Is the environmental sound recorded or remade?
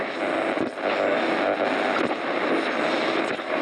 recorded